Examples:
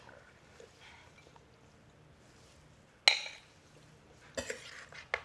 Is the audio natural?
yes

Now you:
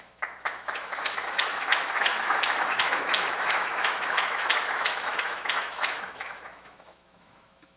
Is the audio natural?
no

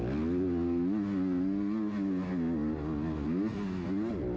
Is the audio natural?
yes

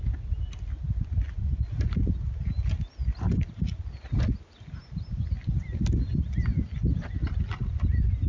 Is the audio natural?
yes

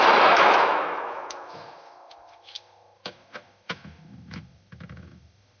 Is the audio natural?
no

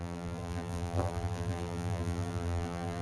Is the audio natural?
no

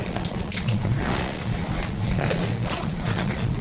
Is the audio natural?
no